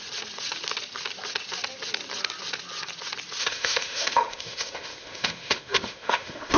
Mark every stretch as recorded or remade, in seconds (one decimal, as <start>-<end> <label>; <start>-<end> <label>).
0.0-3.4 recorded; 3.4-6.6 remade